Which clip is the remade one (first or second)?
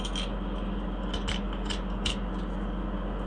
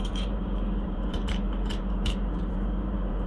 second